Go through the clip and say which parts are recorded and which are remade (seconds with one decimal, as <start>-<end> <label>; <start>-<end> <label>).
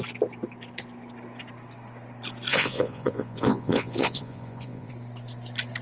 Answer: 0.0-2.5 recorded; 2.5-4.9 remade; 4.9-5.8 recorded